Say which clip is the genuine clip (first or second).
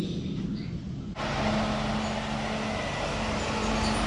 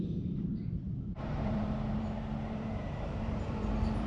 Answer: first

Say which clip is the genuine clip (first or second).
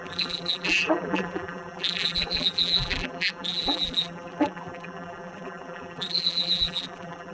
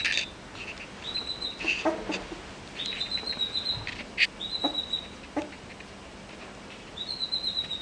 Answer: second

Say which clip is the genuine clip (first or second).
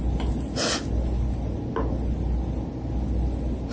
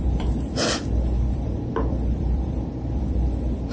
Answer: first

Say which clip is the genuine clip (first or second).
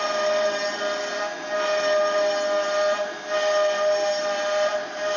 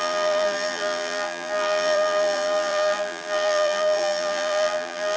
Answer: first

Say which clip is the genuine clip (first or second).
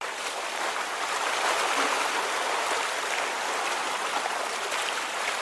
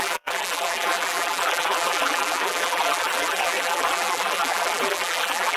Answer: first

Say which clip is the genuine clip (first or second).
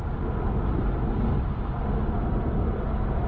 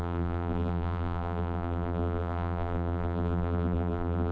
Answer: first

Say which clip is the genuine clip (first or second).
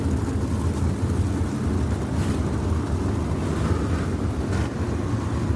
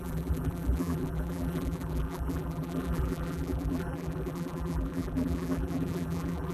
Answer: first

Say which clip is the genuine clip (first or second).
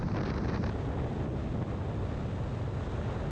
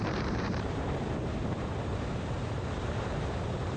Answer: first